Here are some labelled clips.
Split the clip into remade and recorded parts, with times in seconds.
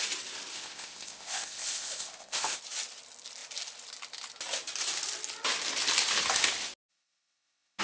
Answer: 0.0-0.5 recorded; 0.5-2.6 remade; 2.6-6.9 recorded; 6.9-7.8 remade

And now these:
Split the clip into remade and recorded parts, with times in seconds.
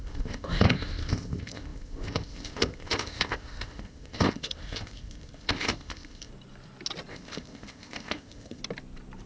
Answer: 0.0-6.3 remade; 6.3-7.1 recorded; 7.1-8.6 remade; 8.6-9.3 recorded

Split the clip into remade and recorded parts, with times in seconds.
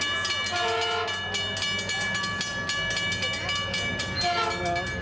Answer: 0.0-5.0 recorded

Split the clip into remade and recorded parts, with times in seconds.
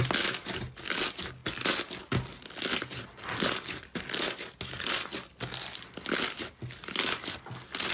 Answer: 0.0-7.9 recorded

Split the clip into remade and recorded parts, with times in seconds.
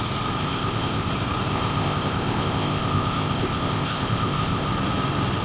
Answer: 0.0-0.4 recorded; 0.4-1.1 remade; 1.1-1.5 recorded; 1.5-4.7 remade; 4.7-5.4 recorded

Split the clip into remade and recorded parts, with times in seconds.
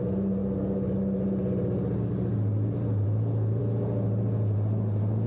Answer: 0.0-5.3 recorded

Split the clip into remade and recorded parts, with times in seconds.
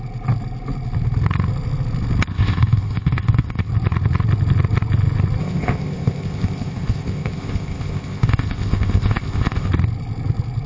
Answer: 0.0-2.3 recorded; 2.3-3.7 remade; 3.7-5.4 recorded; 5.4-9.7 remade; 9.7-10.7 recorded